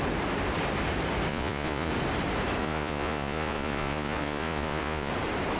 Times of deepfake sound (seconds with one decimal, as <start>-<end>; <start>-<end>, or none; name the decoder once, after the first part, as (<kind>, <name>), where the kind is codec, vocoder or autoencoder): 1.3-1.9 (vocoder, Vocos); 2.6-5.1